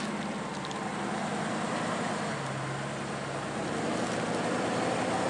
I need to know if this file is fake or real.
real